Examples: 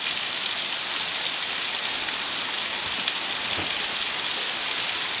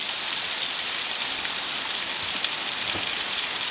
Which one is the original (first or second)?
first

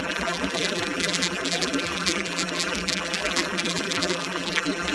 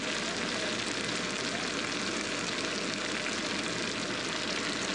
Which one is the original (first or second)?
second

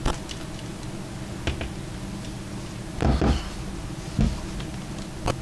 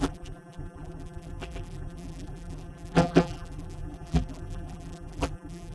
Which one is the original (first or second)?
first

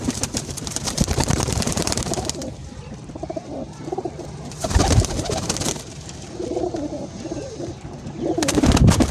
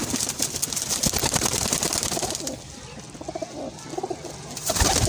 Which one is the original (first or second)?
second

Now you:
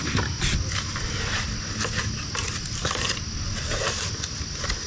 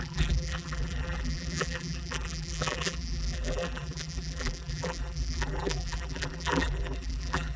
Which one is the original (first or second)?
first